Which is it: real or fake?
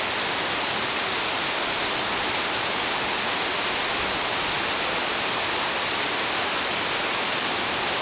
real